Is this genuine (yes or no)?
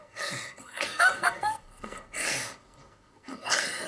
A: no